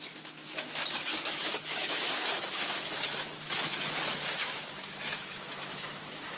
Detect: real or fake fake